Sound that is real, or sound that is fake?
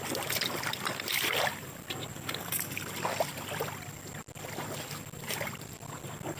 real